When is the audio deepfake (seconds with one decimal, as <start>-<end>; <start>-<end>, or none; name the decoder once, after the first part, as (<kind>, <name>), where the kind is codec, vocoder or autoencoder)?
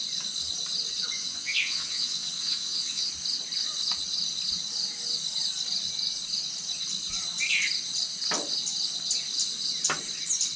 1.2-3.1 (vocoder, WaveNeXt)